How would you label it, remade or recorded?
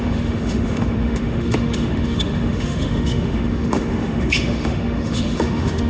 remade